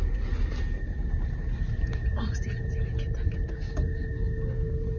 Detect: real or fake real